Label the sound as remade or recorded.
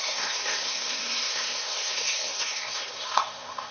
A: remade